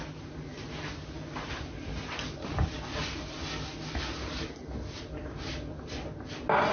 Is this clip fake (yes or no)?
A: no